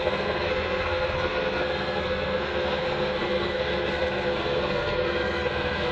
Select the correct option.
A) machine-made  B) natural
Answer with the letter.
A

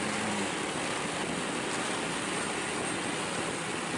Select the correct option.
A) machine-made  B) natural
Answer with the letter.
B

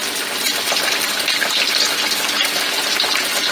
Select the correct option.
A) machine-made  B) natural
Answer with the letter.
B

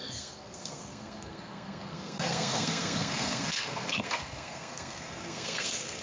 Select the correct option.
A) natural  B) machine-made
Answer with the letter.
B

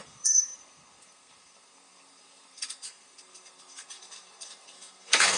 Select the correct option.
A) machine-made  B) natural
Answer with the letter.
A